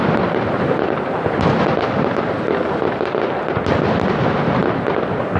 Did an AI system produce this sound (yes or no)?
no